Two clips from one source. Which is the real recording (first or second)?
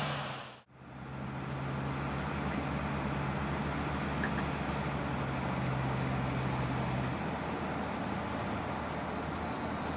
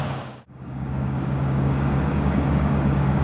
first